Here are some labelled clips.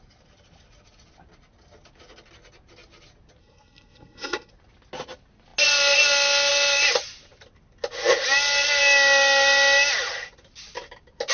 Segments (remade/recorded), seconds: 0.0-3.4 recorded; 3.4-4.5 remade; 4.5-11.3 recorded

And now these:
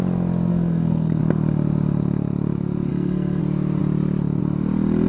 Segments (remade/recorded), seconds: 0.0-0.5 recorded; 0.5-1.2 remade; 1.2-2.9 recorded; 2.9-3.4 remade; 3.4-5.1 recorded